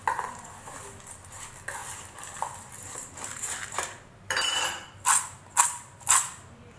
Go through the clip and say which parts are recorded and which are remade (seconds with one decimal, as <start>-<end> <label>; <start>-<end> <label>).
0.0-3.3 recorded; 3.3-4.6 remade; 4.6-6.8 recorded